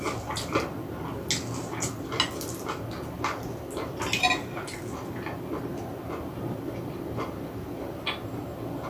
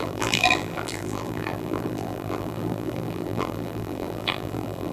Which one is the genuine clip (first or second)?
first